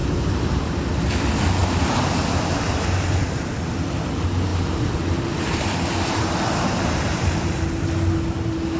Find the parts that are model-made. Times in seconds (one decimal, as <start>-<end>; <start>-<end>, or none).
0.0-0.8; 1.6-2.2; 4.5-7.6